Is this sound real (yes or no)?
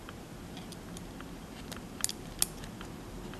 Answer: yes